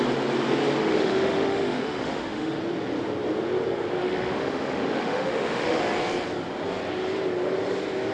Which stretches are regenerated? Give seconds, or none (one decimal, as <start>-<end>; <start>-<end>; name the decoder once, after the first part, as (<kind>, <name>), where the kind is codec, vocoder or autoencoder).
0.8-2.6 (autoencoder, DAC-VAE); 4.0-5.8